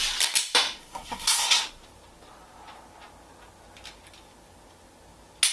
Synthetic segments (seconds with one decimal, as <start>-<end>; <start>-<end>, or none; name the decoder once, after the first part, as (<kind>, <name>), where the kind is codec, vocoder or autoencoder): 0.8-1.6 (codec, SNAC)